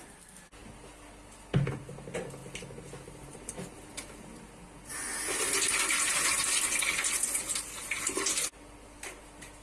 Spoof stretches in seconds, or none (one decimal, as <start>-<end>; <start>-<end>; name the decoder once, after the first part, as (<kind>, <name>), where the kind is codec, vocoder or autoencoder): none